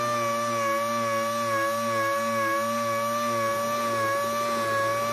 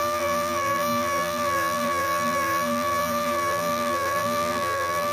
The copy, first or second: second